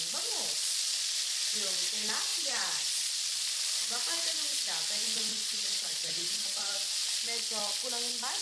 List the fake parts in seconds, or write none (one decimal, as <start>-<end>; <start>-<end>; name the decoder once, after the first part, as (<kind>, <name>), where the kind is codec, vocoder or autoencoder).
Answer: 2.3-3.1 (vocoder, Vocos); 5.3-6.7